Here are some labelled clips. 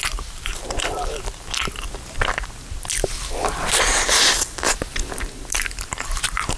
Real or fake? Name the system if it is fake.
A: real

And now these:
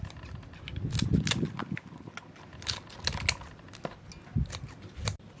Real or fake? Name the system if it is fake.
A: real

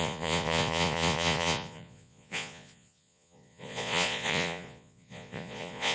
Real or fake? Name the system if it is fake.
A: fake, vocoder, Vocos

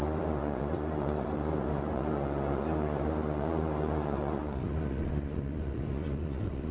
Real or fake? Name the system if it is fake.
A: fake, vocoder, Vocos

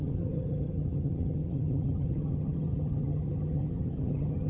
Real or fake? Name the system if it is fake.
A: fake, vocoder, HiFi-GAN